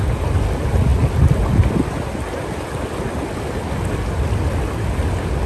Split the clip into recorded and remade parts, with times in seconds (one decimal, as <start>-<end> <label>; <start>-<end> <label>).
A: 0.0-5.5 recorded